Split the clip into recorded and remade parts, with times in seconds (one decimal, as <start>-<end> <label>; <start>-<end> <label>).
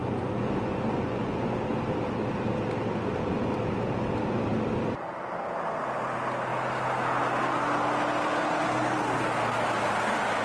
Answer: 0.0-1.6 remade; 1.6-10.4 recorded